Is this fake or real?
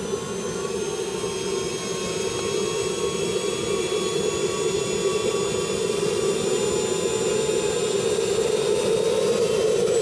real